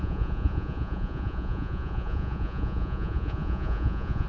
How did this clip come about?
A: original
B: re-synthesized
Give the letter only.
B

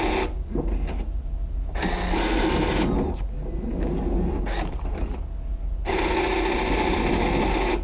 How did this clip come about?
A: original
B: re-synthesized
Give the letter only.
A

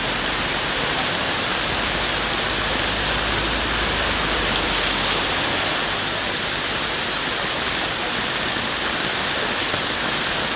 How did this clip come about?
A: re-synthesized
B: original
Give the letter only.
B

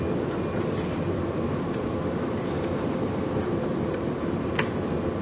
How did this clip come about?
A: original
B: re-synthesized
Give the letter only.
A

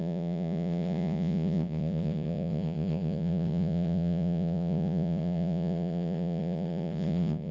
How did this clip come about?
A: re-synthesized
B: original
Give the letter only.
A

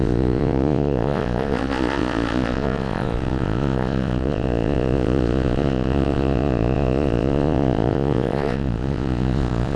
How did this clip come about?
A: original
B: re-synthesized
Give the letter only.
B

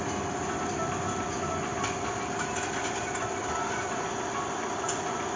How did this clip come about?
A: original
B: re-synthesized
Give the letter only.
A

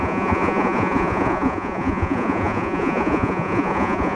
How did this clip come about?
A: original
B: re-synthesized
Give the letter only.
B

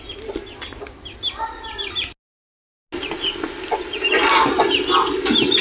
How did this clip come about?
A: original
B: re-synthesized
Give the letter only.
A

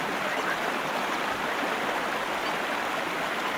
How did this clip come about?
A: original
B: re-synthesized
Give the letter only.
A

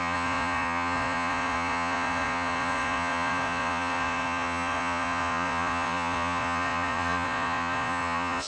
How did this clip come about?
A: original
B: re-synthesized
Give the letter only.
B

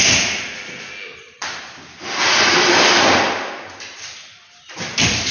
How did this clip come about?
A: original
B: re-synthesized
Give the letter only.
A